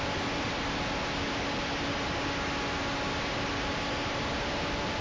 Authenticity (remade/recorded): recorded